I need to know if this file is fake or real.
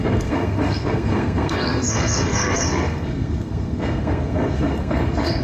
fake